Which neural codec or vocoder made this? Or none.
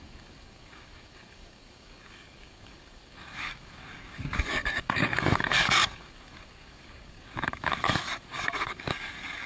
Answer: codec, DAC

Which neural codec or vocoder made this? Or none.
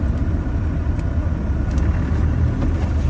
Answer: none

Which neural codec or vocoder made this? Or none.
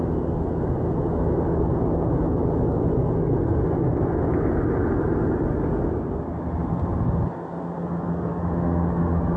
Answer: none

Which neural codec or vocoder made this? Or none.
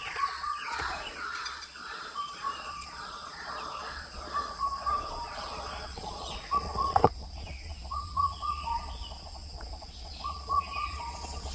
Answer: vocoder, Vocos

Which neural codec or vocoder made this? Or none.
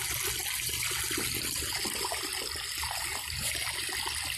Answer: none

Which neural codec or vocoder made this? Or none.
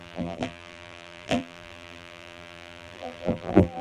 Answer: vocoder, BigVGAN v2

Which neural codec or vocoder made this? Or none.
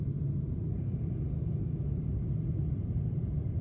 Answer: vocoder, BigVGAN v2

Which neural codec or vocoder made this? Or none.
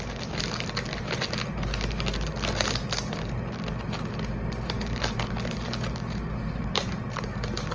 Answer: none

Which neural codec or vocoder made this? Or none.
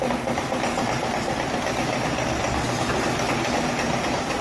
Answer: none